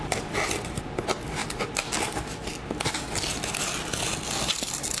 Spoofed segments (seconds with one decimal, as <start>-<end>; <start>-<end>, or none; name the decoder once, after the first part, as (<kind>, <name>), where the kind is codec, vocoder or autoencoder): none